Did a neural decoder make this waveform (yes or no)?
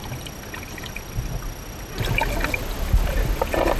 no